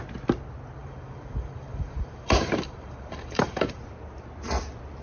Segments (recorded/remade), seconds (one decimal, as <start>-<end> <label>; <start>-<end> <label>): 0.0-0.8 recorded; 0.8-3.8 remade; 3.8-5.0 recorded